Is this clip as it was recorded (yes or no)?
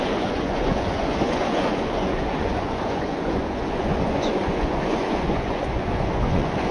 no